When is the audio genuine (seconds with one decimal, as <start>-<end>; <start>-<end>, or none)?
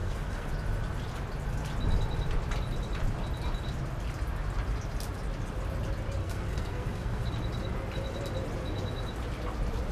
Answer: 0.5-6.2; 7.3-9.9